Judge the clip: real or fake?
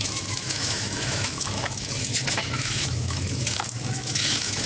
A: fake